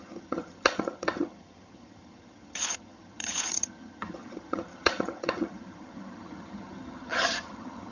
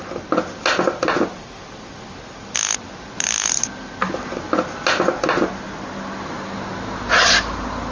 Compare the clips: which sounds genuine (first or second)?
second